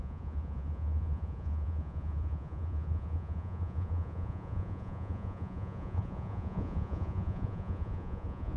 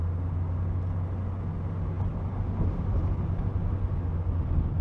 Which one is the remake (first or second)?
first